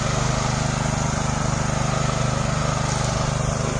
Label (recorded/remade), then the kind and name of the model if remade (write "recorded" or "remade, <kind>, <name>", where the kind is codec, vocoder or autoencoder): recorded